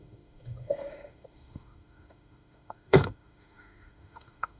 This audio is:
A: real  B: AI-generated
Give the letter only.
B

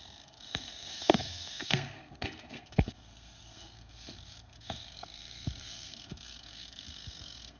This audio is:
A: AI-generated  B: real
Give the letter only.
A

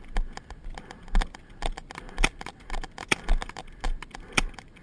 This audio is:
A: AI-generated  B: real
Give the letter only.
B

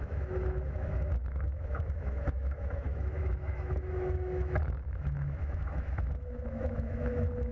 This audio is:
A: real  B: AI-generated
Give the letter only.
B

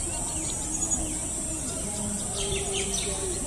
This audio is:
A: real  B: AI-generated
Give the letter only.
A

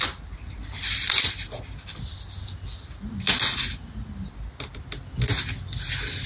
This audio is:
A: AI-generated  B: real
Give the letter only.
B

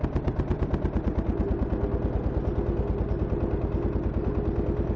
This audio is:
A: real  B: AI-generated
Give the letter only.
A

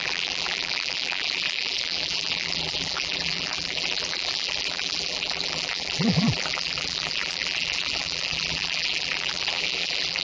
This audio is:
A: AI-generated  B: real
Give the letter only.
A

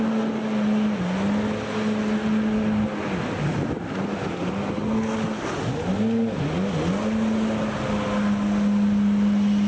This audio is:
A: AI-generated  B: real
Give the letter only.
B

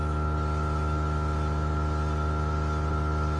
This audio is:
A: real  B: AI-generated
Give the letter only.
A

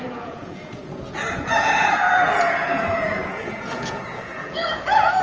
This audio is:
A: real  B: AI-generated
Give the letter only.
B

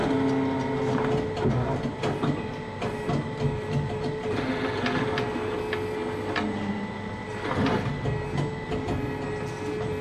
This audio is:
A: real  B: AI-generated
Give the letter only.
A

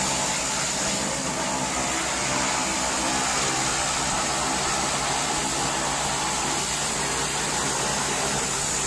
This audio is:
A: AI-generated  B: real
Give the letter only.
B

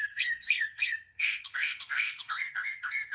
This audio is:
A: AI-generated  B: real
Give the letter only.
A